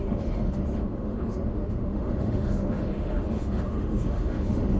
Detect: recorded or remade remade